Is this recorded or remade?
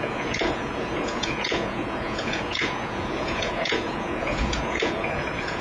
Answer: remade